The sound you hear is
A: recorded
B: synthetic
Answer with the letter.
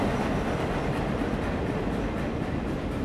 A